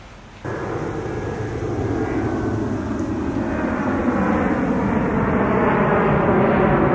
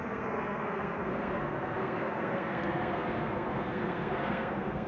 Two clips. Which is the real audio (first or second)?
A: first